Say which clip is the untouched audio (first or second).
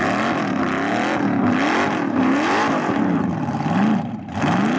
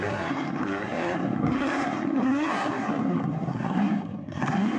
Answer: first